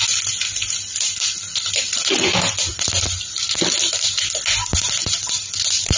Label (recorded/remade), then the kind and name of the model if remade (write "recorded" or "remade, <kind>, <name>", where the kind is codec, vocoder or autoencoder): recorded